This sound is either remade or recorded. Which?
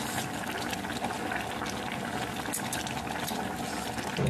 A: recorded